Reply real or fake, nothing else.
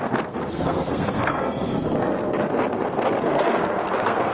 fake